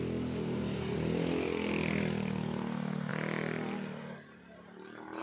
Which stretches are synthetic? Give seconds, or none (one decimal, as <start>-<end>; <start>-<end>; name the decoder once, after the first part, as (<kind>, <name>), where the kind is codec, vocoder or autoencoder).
none